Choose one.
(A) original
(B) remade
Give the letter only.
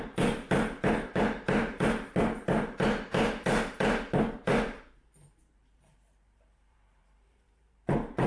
B